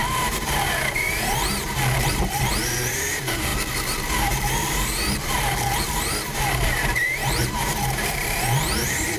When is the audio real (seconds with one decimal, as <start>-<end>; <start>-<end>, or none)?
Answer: 3.5-4.2